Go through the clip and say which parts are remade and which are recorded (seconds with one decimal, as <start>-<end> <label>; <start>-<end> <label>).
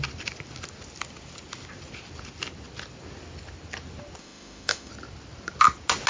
0.0-4.2 recorded; 4.2-4.9 remade; 4.9-6.1 recorded